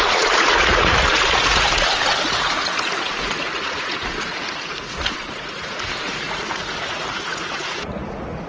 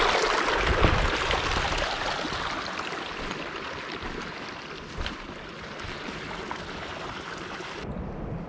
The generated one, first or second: first